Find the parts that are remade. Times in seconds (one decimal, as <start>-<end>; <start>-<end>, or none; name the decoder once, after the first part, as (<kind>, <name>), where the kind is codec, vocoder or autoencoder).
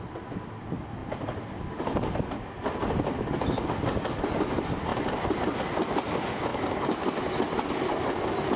none